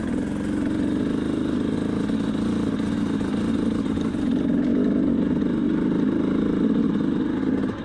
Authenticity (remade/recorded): recorded